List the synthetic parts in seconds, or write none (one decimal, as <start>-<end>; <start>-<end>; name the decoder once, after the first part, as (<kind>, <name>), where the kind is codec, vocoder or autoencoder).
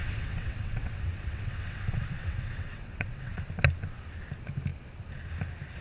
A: 0.0-3.5 (vocoder, WaveNeXt)